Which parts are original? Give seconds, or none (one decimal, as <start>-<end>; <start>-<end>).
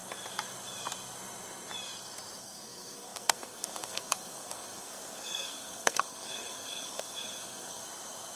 0.0-2.4; 7.8-8.4